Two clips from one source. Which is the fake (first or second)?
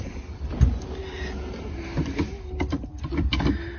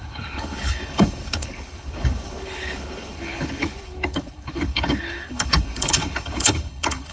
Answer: second